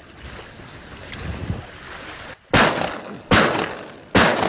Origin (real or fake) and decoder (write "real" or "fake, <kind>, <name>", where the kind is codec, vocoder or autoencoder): real